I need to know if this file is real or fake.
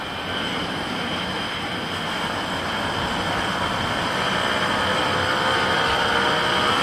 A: real